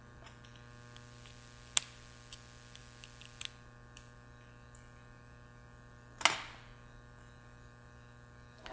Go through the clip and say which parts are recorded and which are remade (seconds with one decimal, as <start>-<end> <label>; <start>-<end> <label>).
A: 0.0-8.7 recorded